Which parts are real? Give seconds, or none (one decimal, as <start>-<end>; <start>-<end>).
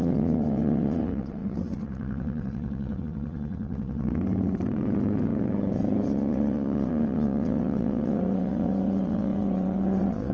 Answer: none